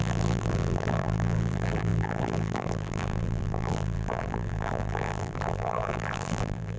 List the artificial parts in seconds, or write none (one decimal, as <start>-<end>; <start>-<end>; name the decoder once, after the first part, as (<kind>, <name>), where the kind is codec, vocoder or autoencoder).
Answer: 0.0-6.8 (vocoder, BigVGAN v2)